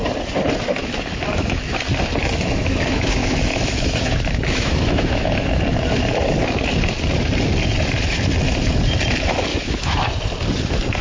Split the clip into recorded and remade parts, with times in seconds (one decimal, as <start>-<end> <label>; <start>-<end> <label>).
0.0-0.8 recorded; 0.8-1.8 remade; 1.8-2.2 recorded; 2.2-5.6 remade; 5.6-9.5 recorded; 9.5-10.0 remade; 10.0-11.0 recorded